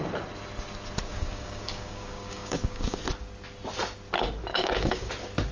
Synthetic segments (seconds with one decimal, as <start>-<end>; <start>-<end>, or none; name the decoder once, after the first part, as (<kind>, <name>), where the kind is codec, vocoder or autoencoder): 1.1-3.0 (codec, DAC); 4.5-5.1